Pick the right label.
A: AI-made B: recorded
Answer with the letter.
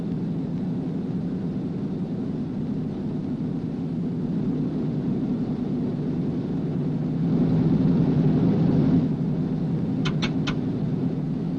B